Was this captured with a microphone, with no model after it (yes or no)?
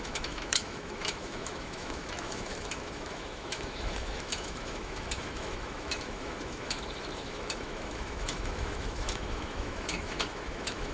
no